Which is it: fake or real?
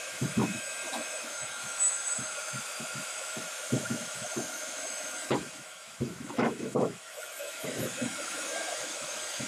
fake